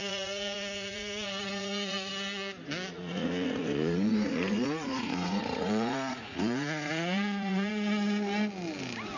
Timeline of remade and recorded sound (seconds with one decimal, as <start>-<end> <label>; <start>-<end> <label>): 0.0-2.1 remade; 2.1-2.9 recorded; 2.9-7.7 remade; 7.7-9.2 recorded